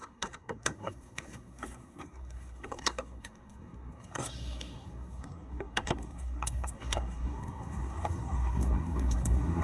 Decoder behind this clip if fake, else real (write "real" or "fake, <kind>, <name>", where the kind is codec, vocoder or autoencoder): fake, codec, SNAC